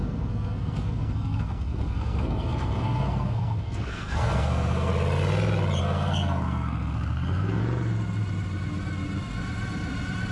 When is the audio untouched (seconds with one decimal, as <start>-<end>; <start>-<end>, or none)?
4.9-5.8; 7.6-10.3

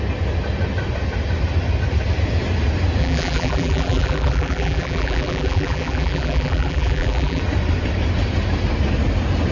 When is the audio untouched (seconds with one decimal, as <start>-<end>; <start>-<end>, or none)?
0.0-3.0; 7.4-9.5

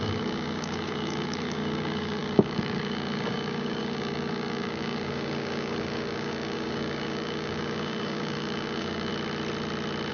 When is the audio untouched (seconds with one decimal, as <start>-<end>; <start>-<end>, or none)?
9.1-10.1

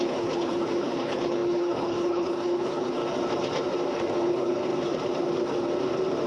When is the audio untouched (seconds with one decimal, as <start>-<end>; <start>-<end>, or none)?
3.0-4.3; 4.7-6.3

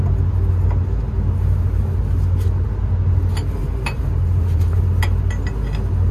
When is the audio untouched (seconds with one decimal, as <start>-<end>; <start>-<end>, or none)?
0.0-3.6; 4.7-6.1

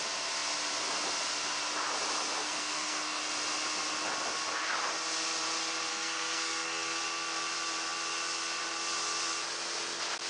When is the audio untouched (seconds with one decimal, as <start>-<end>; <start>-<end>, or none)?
0.0-2.4; 3.2-5.9; 7.0-10.3

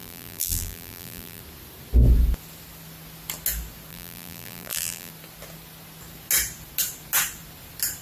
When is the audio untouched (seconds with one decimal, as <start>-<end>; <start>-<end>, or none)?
1.4-3.9; 5.1-8.0